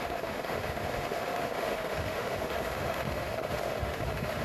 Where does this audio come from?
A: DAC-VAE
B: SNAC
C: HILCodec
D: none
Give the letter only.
A